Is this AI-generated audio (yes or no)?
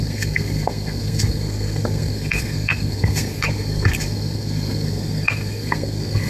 yes